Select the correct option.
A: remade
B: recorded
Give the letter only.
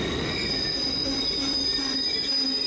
B